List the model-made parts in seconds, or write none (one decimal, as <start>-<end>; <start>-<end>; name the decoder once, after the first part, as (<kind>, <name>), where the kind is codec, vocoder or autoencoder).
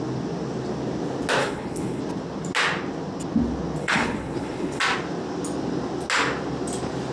1.4-2.0 (codec, HILCodec); 3.8-4.8